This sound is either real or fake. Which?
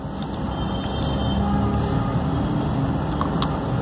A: real